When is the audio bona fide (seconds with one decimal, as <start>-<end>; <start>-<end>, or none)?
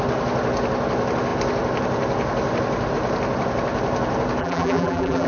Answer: 0.0-4.4